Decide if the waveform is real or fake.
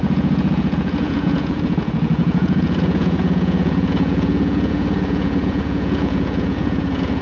fake